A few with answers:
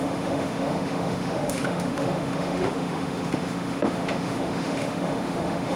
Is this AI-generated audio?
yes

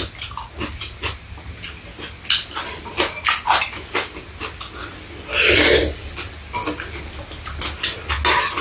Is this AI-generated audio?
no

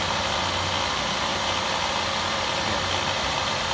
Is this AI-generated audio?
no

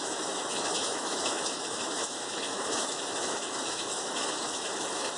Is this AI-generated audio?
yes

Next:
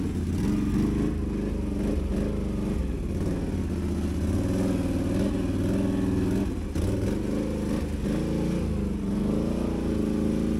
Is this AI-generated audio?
no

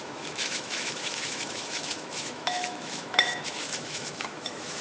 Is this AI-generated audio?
yes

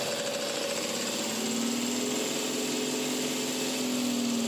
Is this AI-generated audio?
no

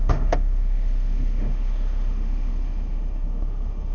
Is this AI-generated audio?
yes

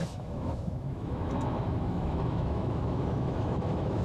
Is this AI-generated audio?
yes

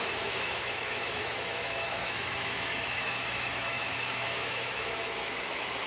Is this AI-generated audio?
yes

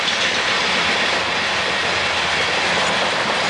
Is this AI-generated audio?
no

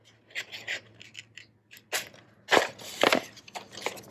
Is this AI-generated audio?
no